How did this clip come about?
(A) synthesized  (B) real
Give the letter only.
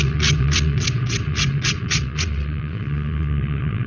A